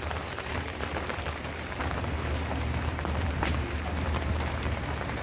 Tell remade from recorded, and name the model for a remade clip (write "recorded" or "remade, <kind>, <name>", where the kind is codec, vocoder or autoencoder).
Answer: remade, vocoder, BigVGAN v2